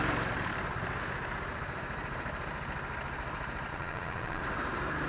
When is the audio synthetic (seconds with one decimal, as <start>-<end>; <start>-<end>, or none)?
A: 3.7-4.4